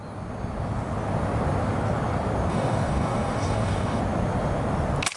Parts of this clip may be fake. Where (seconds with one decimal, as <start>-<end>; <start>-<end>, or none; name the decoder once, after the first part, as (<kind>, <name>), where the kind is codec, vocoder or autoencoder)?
2.5-4.0 (codec, DAC)